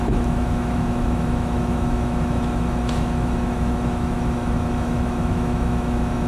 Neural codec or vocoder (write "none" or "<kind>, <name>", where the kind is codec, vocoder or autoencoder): autoencoder, DAC-VAE